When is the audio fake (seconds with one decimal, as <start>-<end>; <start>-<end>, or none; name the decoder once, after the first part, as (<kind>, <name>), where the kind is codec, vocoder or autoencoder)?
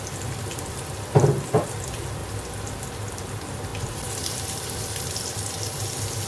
0.0-2.2 (vocoder, BigVGAN v2); 2.8-6.3